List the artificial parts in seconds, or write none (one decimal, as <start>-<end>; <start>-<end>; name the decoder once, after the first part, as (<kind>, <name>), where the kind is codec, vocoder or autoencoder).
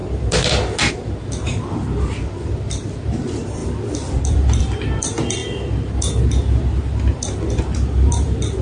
0.9-5.4 (vocoder, BigVGAN v2); 7.6-8.6